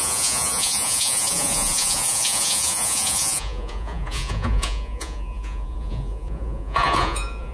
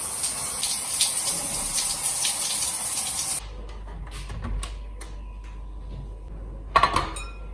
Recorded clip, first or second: second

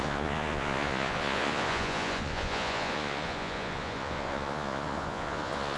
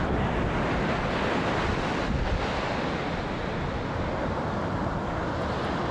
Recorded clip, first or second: second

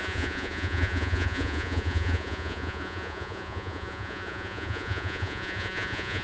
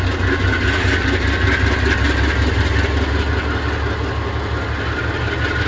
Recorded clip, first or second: second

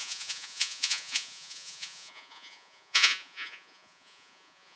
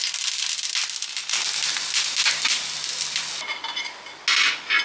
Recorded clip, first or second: second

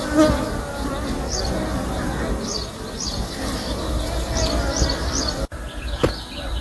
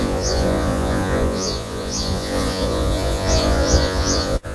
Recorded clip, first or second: first